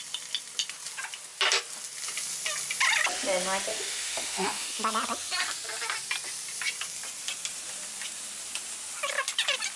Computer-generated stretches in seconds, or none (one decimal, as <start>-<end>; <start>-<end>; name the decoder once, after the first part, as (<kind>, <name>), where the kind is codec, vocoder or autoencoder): 3.7-4.8 (autoencoder, DAC-VAE)